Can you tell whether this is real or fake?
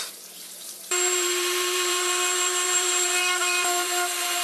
fake